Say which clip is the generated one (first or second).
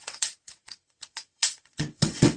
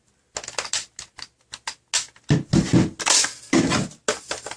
first